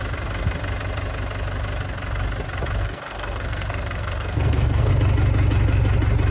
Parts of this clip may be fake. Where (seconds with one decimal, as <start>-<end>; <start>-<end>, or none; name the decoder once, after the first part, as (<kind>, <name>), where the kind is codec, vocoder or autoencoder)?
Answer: 2.8-4.9 (codec, SNAC)